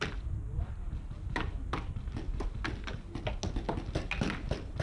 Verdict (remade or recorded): recorded